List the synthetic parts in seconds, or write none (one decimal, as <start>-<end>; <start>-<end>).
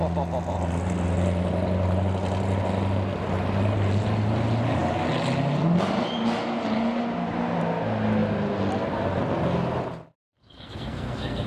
10.2-11.5